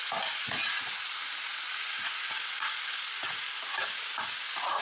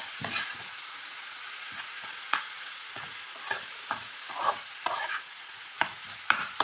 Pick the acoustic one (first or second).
first